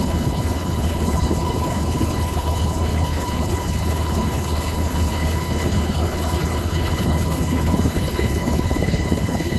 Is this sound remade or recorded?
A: remade